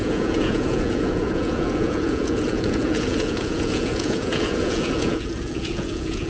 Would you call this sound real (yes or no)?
no